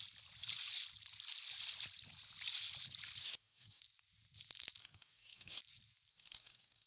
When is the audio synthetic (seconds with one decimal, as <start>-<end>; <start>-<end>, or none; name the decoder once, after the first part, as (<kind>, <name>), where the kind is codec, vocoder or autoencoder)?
3.2-3.8 (codec, DAC); 4.8-5.6; 6.1-6.9